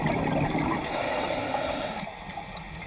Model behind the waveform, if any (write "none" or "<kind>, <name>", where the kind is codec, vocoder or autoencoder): none